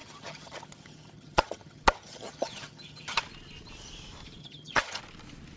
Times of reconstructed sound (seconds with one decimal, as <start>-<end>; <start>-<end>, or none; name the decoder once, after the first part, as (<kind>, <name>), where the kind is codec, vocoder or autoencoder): 0.0-3.2 (vocoder, HiFi-GAN); 4.4-5.0